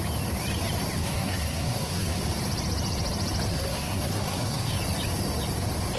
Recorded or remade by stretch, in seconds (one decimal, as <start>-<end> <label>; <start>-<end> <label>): 0.0-1.0 recorded; 1.0-2.2 remade; 2.2-3.5 recorded; 3.5-4.8 remade; 4.8-6.0 recorded